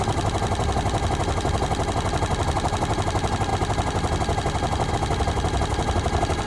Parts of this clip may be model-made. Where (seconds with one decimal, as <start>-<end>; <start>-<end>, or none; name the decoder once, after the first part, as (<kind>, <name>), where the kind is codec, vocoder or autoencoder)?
none